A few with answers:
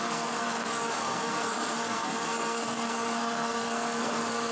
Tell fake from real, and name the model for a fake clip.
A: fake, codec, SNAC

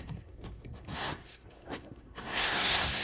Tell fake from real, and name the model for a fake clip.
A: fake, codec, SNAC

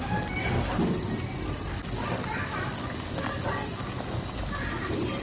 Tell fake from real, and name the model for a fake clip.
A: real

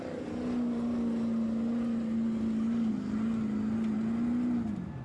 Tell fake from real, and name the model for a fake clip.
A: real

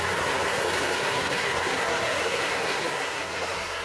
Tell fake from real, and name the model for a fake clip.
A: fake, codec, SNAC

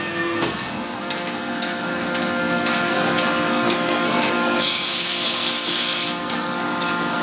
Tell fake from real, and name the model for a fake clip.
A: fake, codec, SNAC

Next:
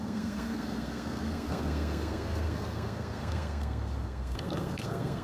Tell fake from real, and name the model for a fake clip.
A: fake, codec, SNAC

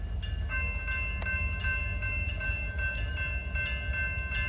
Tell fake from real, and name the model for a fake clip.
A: real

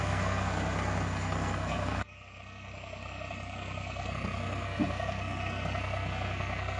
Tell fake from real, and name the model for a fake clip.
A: fake, codec, SNAC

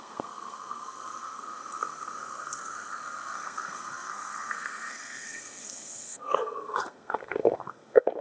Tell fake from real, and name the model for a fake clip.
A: fake, codec, SNAC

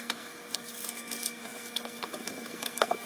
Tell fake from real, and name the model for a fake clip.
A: fake, codec, SNAC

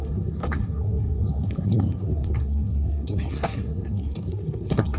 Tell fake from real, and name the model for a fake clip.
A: fake, codec, SNAC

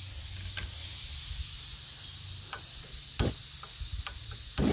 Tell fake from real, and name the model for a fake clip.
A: real